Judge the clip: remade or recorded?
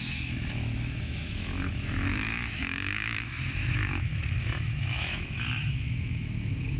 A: remade